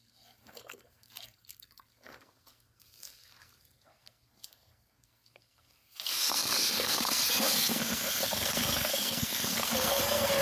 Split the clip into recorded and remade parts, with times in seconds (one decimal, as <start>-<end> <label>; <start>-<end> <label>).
0.0-10.4 remade